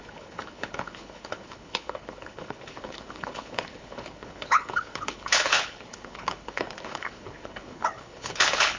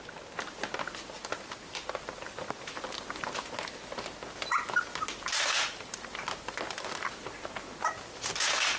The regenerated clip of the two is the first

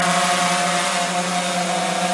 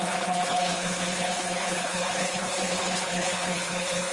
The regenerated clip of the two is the second